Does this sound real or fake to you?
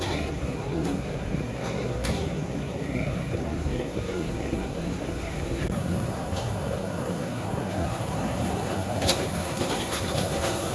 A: fake